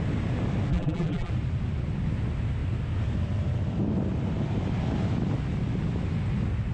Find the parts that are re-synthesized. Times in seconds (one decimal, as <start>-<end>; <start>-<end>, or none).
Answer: 0.7-1.3